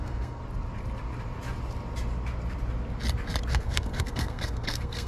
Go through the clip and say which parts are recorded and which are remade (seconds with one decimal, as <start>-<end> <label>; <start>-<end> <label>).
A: 0.0-0.4 remade; 0.4-3.5 recorded; 3.5-5.1 remade